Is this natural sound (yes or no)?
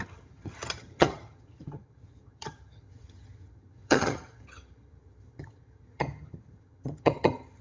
no